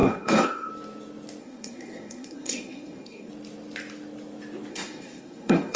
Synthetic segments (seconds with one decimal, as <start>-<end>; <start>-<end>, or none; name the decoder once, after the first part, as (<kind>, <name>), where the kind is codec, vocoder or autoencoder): 0.0-0.7 (codec, SNAC); 1.4-3.3; 4.7-5.8